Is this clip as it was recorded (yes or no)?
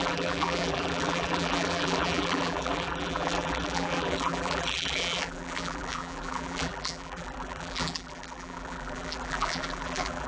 no